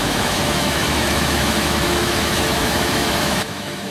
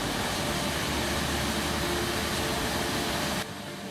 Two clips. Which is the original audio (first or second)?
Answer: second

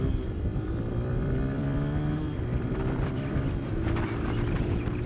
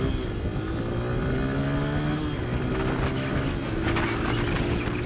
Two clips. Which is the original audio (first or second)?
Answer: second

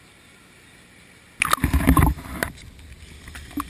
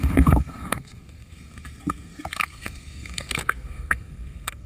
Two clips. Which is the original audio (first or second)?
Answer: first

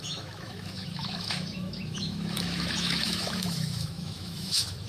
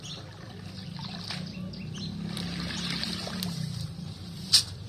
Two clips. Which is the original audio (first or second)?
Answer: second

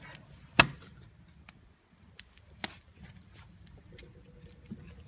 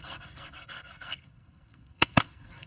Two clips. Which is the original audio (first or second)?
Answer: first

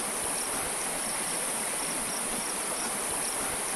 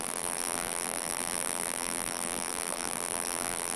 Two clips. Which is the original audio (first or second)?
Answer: first